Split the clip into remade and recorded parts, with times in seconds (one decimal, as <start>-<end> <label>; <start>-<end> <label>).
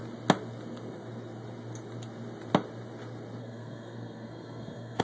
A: 0.0-3.4 recorded; 3.4-5.0 remade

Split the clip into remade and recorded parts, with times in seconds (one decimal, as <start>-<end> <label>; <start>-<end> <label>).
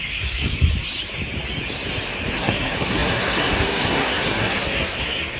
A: 0.0-0.5 remade; 0.5-2.3 recorded; 2.3-5.4 remade